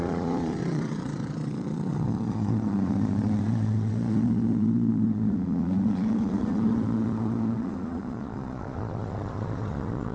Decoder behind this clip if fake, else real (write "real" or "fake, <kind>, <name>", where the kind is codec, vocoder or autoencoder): fake, vocoder, Vocos